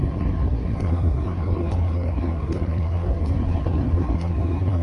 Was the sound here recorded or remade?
remade